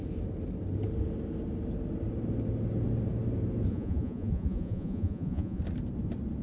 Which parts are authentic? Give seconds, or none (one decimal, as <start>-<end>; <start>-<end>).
0.0-3.7; 5.6-6.4